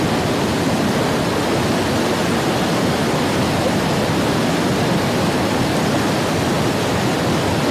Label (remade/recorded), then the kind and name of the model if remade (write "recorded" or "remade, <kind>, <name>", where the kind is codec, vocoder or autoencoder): recorded